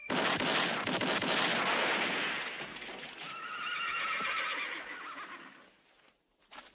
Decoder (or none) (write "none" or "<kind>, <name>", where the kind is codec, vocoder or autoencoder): none